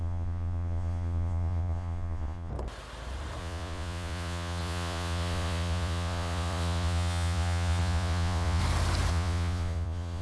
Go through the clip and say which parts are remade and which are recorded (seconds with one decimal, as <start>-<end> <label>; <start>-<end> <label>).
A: 0.0-2.5 remade; 2.5-3.4 recorded; 3.4-8.6 remade; 8.6-9.1 recorded; 9.1-10.2 remade